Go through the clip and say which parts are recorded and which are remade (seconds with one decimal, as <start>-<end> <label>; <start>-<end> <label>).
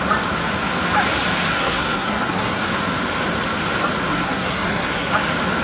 0.0-1.5 recorded; 1.5-2.8 remade; 2.8-4.1 recorded; 4.1-5.1 remade; 5.1-5.6 recorded